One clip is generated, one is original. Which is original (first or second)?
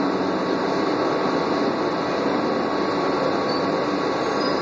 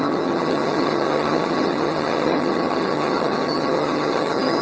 first